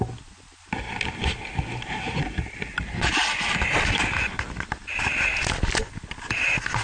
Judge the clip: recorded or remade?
recorded